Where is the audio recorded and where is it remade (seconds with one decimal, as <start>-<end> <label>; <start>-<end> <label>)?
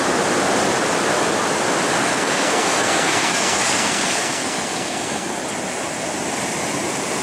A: 0.0-2.0 recorded; 2.0-5.4 remade; 5.4-7.2 recorded